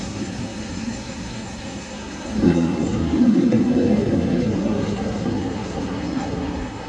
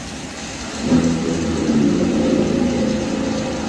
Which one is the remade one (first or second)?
first